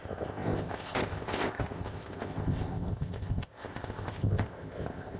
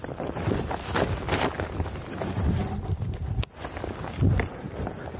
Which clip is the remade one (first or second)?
first